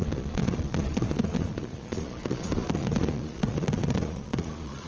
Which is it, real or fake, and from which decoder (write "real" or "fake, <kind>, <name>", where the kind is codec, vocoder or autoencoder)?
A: fake, vocoder, Vocos